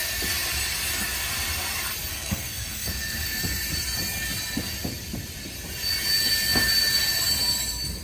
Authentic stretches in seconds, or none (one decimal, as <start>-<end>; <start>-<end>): 0.0-2.1; 3.4-8.0